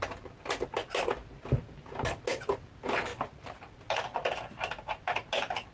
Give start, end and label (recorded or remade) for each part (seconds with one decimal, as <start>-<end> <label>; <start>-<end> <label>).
0.0-3.1 recorded; 3.1-3.7 remade; 3.7-5.7 recorded